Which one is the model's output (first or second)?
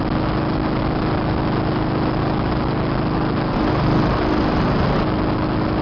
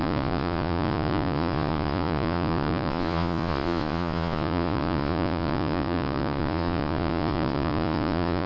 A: second